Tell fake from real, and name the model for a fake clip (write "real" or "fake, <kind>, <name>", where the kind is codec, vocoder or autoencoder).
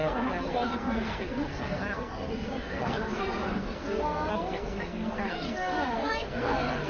fake, codec, SNAC